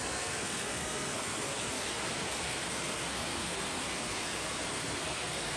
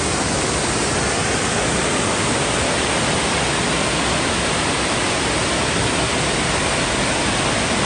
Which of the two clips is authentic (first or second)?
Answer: second